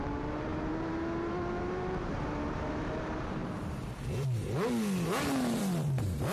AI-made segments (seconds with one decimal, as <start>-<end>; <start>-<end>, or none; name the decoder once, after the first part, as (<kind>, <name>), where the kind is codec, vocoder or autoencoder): 0.0-3.4 (vocoder, BigVGAN v2); 5.6-6.3